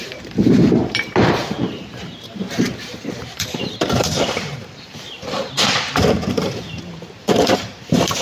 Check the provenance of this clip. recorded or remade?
remade